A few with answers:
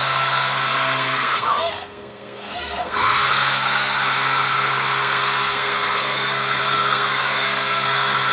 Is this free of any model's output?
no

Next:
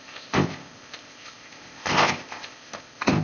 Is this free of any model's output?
no